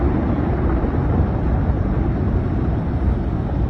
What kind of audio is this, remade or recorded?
recorded